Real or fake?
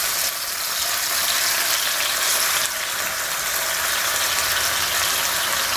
real